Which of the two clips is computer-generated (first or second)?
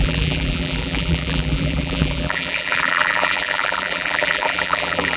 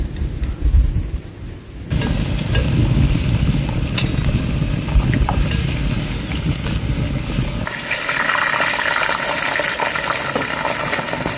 first